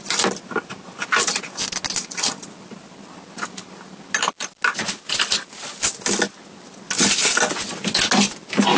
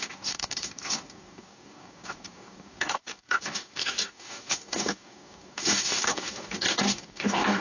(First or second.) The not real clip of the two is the second